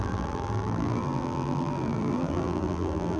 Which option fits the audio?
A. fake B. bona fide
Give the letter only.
A